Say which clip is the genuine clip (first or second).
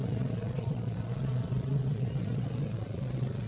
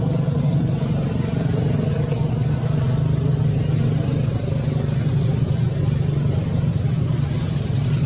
second